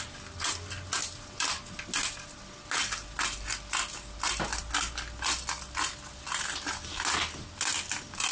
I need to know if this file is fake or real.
real